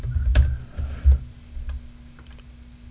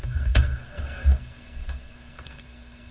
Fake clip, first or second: second